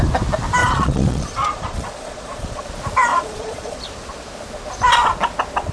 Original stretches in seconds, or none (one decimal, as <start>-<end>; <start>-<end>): 0.0-0.6; 2.6-3.1; 3.8-5.7